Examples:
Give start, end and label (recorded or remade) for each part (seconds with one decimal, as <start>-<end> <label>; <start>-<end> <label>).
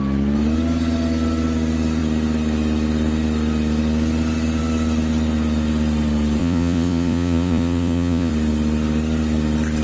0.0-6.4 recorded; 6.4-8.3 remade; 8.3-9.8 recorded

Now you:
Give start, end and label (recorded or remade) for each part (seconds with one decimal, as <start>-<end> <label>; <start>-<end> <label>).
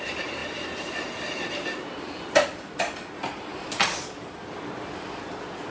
0.0-0.4 recorded; 0.4-3.1 remade; 3.1-3.5 recorded; 3.5-4.5 remade; 4.5-5.7 recorded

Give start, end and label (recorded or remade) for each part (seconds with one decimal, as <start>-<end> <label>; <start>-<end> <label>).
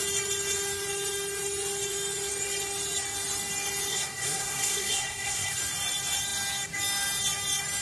0.0-3.9 recorded; 3.9-5.6 remade; 5.6-7.8 recorded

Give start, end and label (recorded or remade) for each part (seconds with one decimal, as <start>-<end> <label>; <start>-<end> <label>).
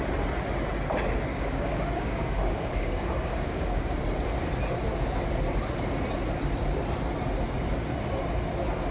0.0-1.3 recorded; 1.3-4.0 remade; 4.0-8.9 recorded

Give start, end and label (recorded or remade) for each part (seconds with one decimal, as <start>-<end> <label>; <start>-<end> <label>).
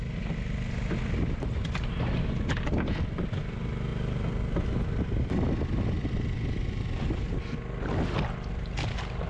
0.0-9.3 recorded